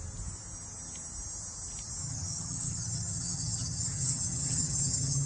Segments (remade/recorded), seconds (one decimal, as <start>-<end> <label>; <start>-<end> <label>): 0.0-2.0 recorded; 2.0-5.3 remade